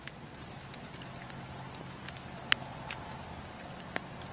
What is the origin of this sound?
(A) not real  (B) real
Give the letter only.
B